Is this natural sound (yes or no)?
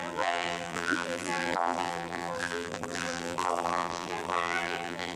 no